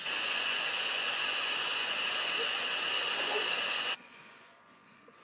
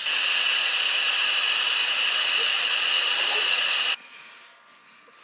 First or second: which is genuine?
second